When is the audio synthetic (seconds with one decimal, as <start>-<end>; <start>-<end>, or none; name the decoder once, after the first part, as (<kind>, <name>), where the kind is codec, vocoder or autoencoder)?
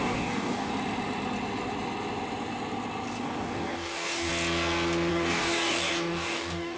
0.0-0.7 (codec, DAC); 3.2-4.3; 5.1-6.8